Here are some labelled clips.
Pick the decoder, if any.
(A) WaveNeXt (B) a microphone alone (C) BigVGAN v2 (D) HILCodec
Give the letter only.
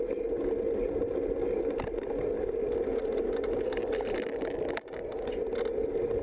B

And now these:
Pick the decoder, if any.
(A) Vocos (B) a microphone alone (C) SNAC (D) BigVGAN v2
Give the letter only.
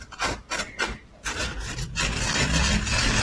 B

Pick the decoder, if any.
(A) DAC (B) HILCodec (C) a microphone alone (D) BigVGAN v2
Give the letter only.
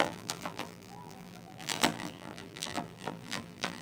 D